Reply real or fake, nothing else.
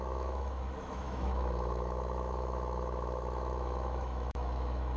fake